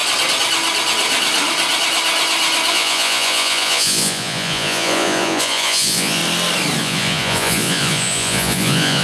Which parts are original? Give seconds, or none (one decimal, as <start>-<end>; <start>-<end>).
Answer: 0.0-2.7; 6.2-6.8